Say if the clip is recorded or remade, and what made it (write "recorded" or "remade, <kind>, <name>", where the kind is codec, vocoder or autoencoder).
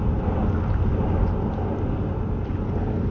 recorded